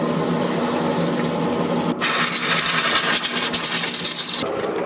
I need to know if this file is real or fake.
real